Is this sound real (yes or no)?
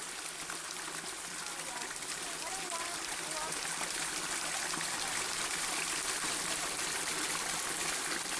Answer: yes